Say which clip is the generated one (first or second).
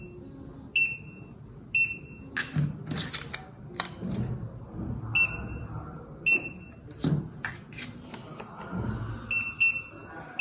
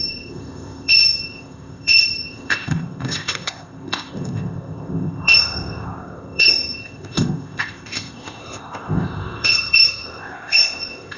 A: second